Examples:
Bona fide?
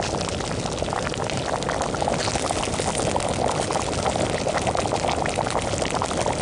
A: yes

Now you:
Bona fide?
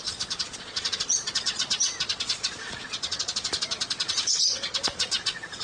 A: no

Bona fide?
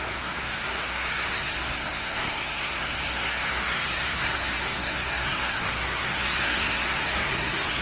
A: no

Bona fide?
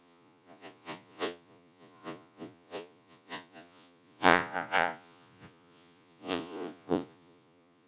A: no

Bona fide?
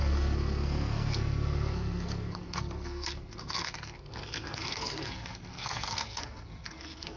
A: no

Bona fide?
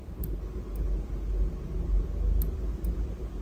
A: yes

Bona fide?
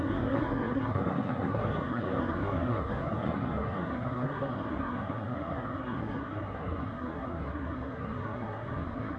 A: no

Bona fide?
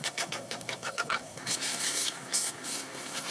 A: no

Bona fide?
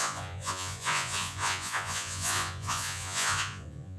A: no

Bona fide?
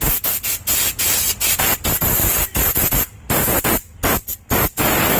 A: yes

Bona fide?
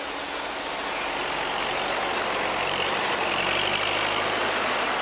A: yes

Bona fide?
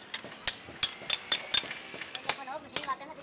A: yes